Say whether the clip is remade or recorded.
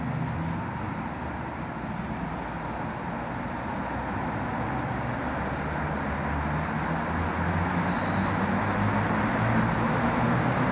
recorded